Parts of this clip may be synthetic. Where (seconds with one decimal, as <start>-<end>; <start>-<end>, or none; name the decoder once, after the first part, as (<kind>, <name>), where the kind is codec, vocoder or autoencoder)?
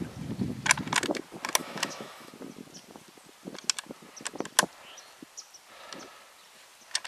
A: 1.6-2.3 (autoencoder, DAC-VAE)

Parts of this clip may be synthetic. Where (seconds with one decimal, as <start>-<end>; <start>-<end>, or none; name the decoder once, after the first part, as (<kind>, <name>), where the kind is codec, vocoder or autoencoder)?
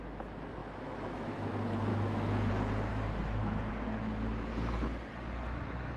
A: 0.6-1.5 (autoencoder, DAC-VAE); 1.9-2.5; 2.9-3.7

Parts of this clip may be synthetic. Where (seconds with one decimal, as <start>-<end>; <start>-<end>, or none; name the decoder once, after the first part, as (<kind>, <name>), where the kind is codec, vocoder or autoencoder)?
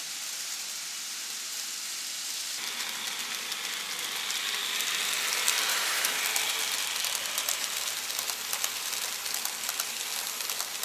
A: 5.7-6.2 (autoencoder, DAC-VAE)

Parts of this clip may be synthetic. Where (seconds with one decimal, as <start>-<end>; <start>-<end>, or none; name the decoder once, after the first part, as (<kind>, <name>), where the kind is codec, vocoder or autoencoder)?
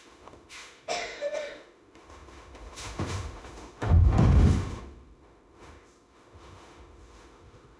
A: 0.0-7.8 (autoencoder, DAC-VAE)